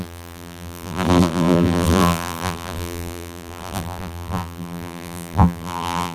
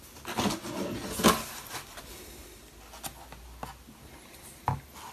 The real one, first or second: second